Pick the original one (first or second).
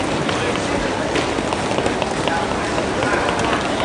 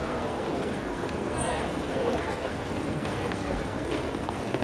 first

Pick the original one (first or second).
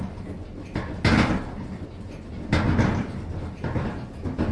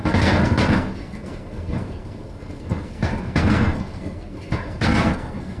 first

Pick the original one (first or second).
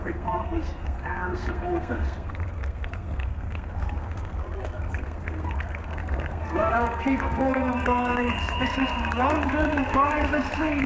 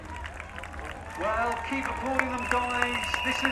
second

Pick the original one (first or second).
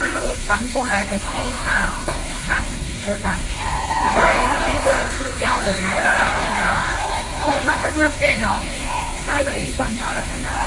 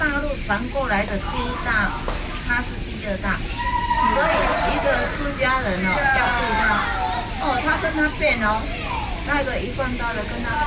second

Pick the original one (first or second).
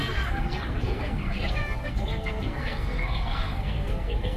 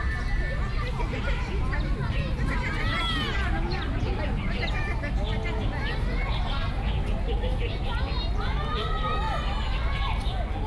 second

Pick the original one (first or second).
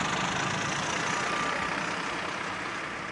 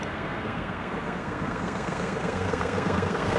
first